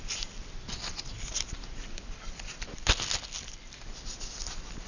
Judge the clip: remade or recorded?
recorded